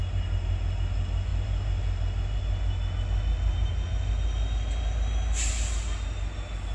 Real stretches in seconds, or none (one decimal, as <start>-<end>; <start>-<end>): 0.0-6.7